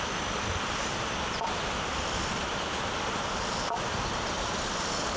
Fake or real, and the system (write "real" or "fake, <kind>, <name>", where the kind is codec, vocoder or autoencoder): real